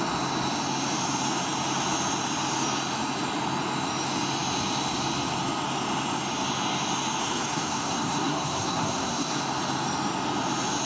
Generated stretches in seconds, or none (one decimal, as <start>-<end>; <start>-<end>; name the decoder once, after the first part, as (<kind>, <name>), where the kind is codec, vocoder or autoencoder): 7.2-9.4 (codec, SNAC)